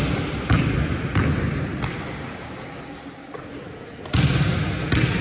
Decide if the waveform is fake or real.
real